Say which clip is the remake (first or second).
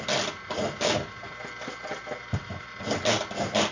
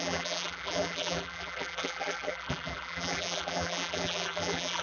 second